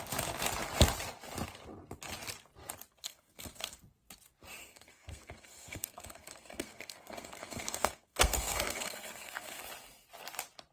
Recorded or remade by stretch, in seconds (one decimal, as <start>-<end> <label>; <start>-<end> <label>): 0.0-2.9 recorded; 2.9-3.8 remade; 3.8-4.6 recorded; 4.6-9.6 remade; 9.6-10.7 recorded